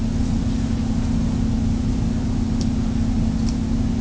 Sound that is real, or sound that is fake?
real